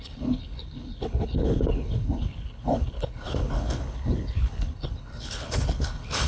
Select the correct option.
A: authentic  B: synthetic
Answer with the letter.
B